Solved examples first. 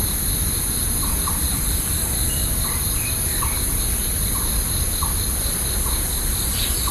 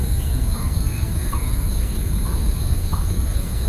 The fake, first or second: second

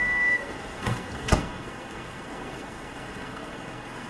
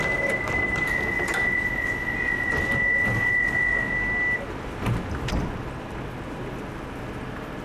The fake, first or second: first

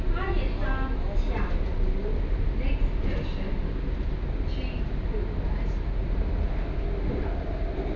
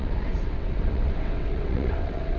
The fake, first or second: second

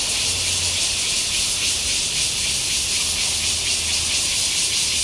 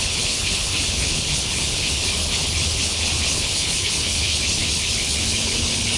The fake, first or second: second